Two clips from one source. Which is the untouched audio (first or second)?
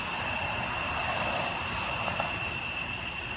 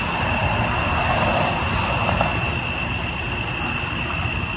second